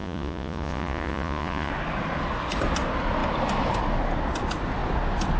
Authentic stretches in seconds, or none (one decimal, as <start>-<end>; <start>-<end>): 1.7-5.4